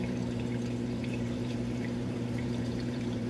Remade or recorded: remade